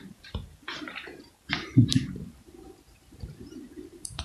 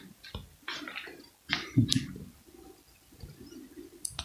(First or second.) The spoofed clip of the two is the first